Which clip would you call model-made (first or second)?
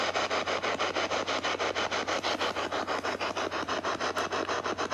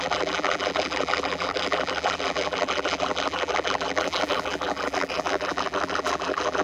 second